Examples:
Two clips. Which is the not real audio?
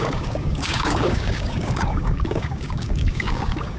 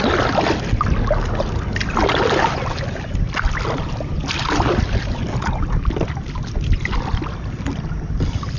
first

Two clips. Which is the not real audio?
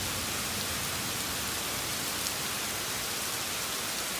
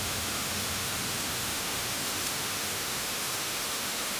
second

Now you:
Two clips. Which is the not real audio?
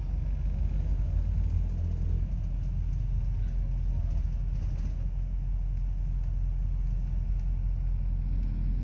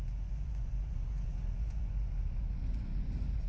second